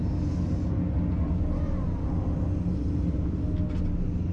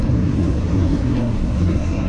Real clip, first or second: first